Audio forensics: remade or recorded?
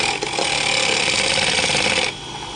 recorded